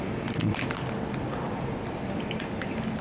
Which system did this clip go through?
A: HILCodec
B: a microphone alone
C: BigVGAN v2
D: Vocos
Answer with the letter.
B